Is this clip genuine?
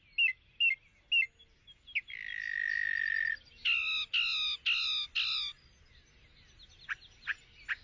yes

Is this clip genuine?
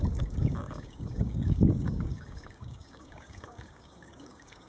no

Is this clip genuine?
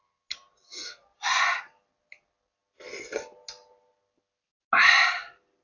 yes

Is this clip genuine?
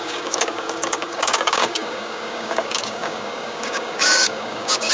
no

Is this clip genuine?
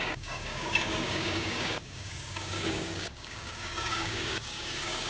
no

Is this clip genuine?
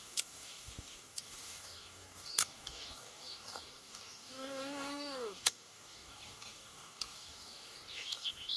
no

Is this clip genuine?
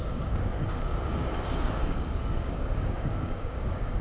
no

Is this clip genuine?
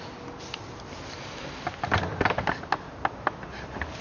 yes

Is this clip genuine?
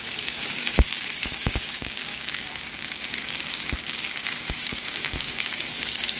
no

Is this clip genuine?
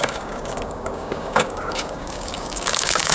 no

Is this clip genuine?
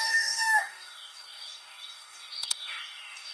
no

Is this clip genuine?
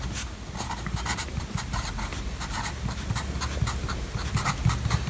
yes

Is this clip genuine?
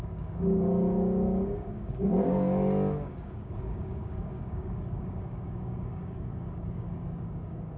no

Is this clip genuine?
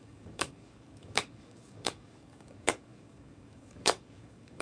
no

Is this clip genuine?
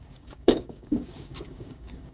no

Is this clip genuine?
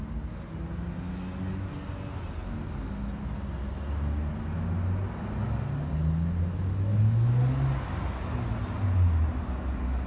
yes